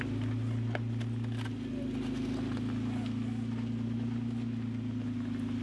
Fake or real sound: real